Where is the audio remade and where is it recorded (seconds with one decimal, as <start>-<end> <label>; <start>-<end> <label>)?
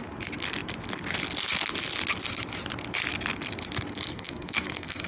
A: 0.0-4.1 recorded; 4.1-5.1 remade